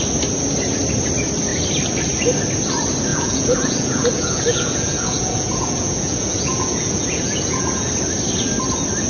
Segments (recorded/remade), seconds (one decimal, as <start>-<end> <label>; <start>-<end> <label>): 0.0-3.1 recorded; 3.1-7.9 remade; 7.9-9.1 recorded